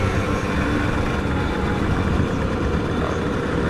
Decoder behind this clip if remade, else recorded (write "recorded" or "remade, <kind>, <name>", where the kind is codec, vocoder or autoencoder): remade, vocoder, BigVGAN v2